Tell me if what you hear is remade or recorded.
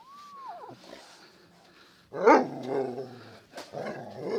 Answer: recorded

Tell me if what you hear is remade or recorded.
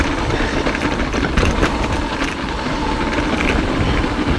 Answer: recorded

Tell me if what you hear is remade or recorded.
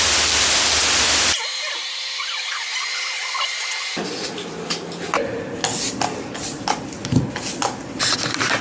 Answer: recorded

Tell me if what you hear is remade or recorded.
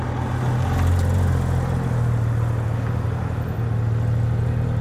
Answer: recorded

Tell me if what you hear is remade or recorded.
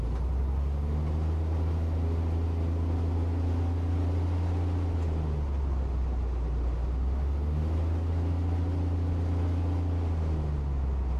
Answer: recorded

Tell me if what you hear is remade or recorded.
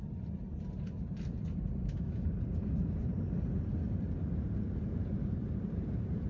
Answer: remade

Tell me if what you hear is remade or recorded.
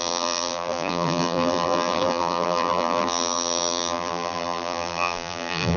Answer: remade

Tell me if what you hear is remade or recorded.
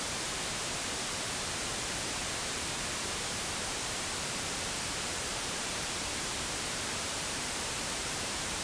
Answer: remade